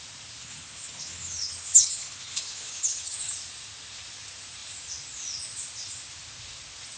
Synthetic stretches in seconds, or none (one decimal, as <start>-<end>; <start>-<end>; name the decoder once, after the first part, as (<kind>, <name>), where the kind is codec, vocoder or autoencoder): 0.4-3.3 (codec, HILCodec)